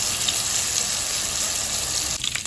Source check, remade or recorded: recorded